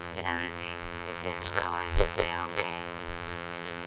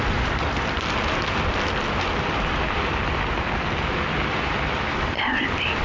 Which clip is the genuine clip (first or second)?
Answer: second